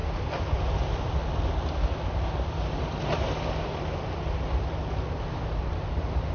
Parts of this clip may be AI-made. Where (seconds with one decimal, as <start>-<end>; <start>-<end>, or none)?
none